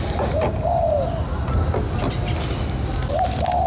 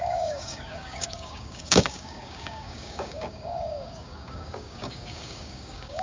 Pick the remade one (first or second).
second